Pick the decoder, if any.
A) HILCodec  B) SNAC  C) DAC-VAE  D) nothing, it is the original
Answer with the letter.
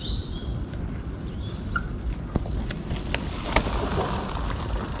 D